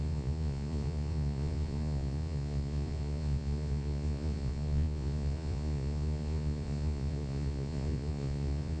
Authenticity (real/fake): fake